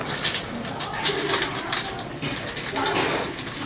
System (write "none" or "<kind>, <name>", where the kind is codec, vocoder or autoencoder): none